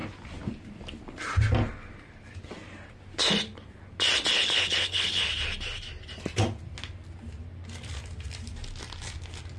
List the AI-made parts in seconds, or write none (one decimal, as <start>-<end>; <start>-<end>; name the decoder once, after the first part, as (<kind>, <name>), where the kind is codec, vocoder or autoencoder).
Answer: 4.3-5.2 (codec, HILCodec)